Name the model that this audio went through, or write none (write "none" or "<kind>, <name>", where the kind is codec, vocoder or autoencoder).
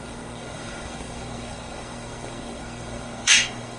codec, SNAC